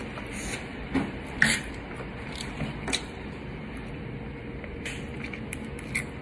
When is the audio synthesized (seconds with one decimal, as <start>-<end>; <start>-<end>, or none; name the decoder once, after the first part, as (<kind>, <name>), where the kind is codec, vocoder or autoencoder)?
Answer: 0.7-1.6 (vocoder, BigVGAN v2)